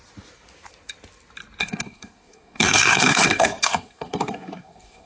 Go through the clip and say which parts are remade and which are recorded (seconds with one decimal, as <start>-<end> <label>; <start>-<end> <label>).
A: 0.0-1.6 recorded; 1.6-5.1 remade